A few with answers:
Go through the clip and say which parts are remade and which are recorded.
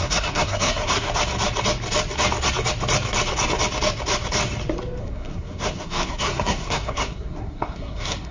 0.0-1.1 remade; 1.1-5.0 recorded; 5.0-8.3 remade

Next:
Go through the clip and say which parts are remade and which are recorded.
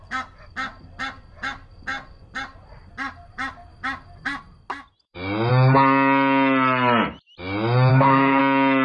0.0-7.9 recorded; 7.9-8.4 remade; 8.4-8.8 recorded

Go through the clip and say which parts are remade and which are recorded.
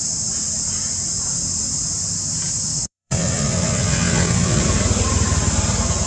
0.0-2.7 recorded; 2.7-4.6 remade; 4.6-6.1 recorded